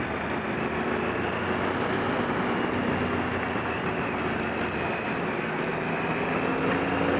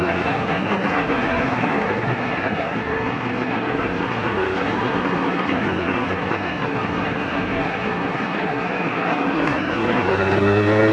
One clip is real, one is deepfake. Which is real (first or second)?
first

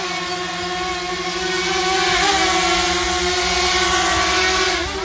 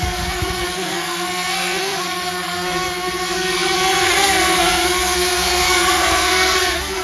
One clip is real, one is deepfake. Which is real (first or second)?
first